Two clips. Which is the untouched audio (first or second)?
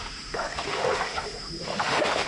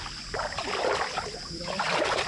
second